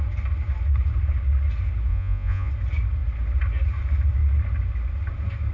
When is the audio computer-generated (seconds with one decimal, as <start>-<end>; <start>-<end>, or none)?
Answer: 1.9-2.5